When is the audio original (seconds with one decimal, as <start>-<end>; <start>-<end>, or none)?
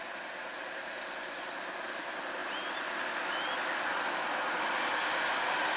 0.0-5.8